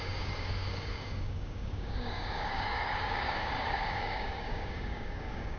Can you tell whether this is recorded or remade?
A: remade